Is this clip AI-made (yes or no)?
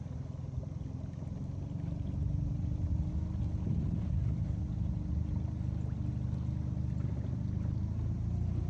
no